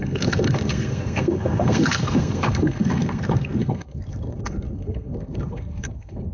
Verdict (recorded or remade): remade